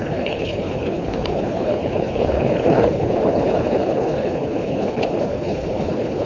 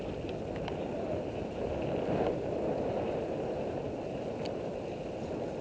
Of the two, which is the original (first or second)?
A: second